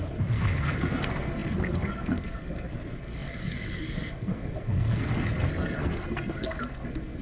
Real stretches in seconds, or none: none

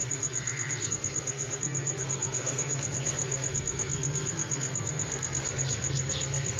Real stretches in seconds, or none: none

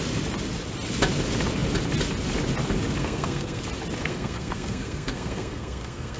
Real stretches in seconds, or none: 0.0-3.0; 3.6-4.0

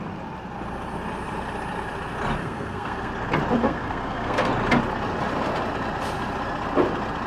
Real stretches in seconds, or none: 0.0-2.4; 3.1-3.6; 4.5-7.3

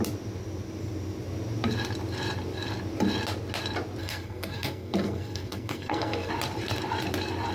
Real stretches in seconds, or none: 0.0-4.0; 6.3-7.5

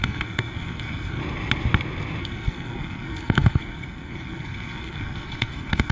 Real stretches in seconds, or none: 1.2-2.2

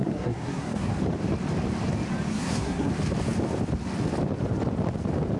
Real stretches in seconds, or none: 0.9-2.3; 2.9-5.4

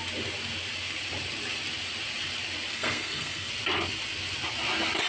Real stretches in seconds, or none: 0.0-2.7; 3.5-5.1